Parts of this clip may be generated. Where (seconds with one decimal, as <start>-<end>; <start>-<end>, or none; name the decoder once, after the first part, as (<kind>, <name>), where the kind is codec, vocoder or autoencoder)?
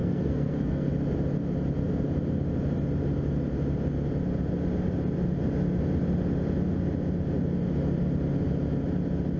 0.0-0.9 (codec, SNAC)